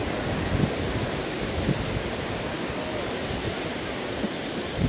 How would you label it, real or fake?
real